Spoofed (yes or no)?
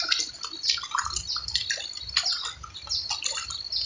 no